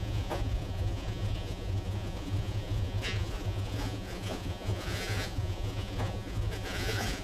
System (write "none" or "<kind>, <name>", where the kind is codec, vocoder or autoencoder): vocoder, Vocos